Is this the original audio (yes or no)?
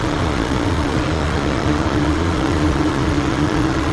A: no